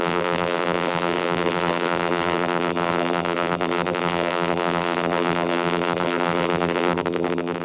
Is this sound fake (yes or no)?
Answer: yes